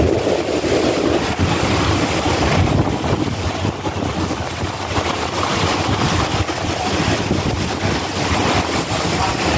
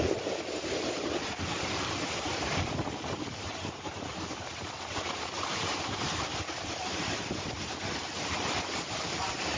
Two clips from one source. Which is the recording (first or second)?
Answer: first